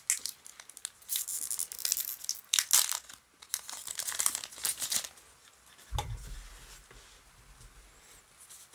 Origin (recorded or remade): recorded